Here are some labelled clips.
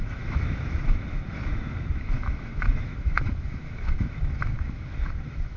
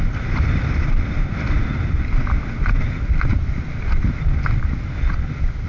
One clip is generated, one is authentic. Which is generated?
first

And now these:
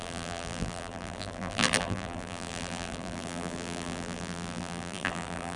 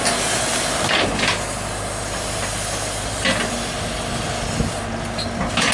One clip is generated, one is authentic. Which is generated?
first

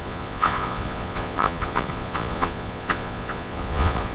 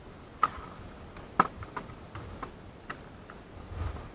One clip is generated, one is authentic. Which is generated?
first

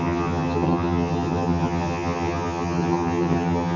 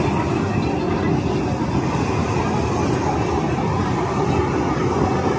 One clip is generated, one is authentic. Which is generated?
first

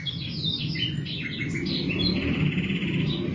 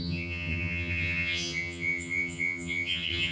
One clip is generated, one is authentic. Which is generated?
second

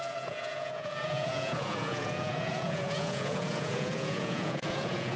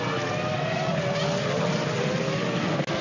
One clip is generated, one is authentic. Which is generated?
first